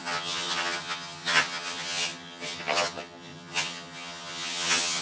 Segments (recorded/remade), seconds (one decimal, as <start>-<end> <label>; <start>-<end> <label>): 0.0-5.0 remade